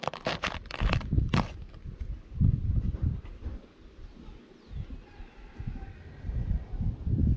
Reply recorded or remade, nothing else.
recorded